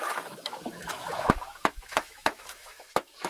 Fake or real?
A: fake